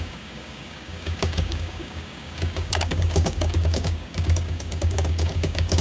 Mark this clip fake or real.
fake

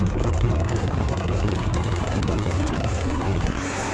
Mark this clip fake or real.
fake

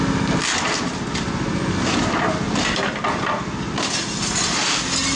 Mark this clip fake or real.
real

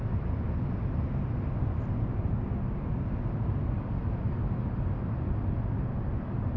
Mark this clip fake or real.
real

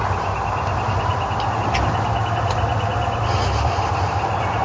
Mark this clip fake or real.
real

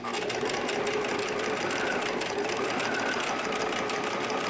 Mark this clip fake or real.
real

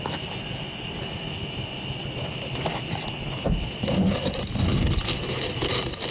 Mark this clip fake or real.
real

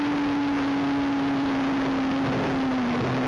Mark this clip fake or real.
real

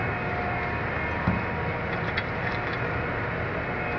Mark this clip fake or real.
real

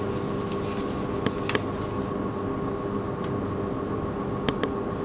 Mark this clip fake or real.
real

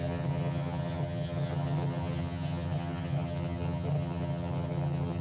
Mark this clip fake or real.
fake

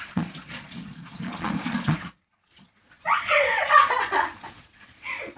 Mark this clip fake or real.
fake